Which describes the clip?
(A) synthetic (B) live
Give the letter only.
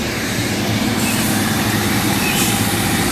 A